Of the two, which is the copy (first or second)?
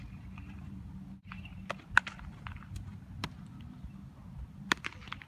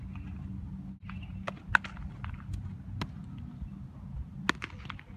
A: first